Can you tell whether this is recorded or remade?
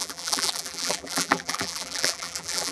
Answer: remade